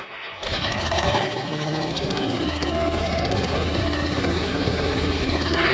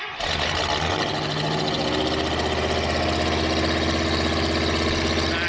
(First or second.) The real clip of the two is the second